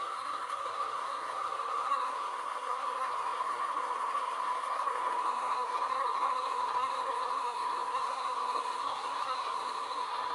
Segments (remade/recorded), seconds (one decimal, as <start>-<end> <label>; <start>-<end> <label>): 0.0-10.3 remade